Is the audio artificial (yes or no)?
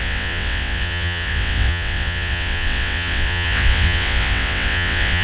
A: yes